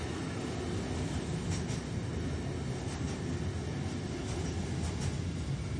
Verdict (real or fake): real